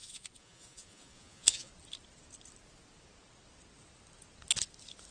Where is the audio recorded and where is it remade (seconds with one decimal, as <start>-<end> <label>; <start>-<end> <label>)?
0.0-1.7 remade; 1.7-5.1 recorded

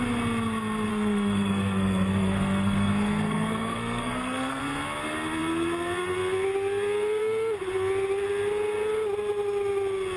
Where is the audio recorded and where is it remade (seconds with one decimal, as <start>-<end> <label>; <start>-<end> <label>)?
0.0-0.9 recorded; 0.9-4.6 remade; 4.6-10.2 recorded

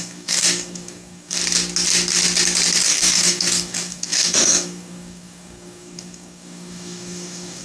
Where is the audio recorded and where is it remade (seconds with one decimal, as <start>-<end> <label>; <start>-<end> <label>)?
0.0-1.4 remade; 1.4-2.8 recorded; 2.8-7.6 remade

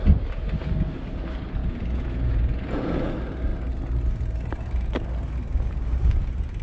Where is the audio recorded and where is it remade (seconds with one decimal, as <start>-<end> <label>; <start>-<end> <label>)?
0.0-1.6 recorded; 1.6-3.1 remade; 3.1-6.6 recorded